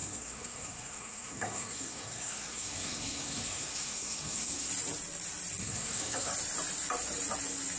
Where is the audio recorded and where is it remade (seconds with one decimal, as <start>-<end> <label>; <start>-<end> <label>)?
0.0-4.7 remade; 4.7-5.6 recorded; 5.6-6.3 remade; 6.3-7.8 recorded